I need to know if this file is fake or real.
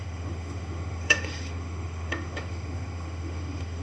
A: fake